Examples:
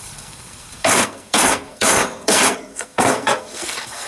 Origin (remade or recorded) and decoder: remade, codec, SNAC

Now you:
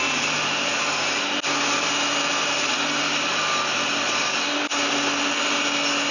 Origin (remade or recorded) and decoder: recorded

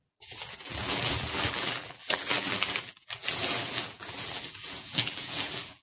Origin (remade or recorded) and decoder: remade, vocoder, BigVGAN v2